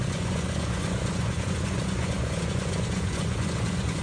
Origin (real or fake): fake